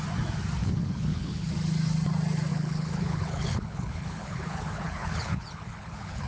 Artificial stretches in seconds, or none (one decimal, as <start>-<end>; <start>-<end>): 0.6-1.5; 2.5-6.3